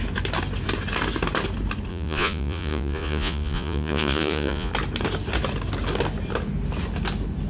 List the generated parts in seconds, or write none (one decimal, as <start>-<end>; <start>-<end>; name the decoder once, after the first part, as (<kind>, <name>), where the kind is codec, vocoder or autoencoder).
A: 1.9-4.7 (vocoder, Vocos)